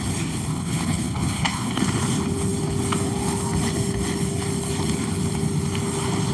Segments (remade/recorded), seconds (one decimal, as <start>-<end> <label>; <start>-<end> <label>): 0.0-0.5 recorded; 0.5-1.7 remade; 1.7-6.3 recorded